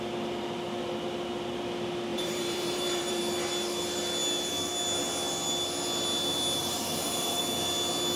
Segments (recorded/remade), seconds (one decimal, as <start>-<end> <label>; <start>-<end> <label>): 0.0-2.1 recorded; 2.1-3.2 remade; 3.2-6.6 recorded; 6.6-7.4 remade; 7.4-8.2 recorded